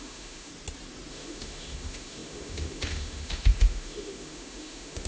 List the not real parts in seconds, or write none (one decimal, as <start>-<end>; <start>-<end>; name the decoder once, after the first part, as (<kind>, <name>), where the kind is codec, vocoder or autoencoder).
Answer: 0.0-0.5 (autoencoder, DAC-VAE); 1.1-5.1